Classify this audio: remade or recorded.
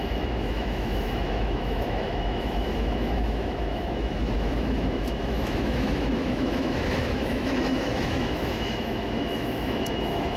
remade